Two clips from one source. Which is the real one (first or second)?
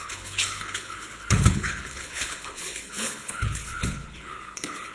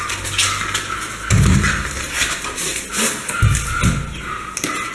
second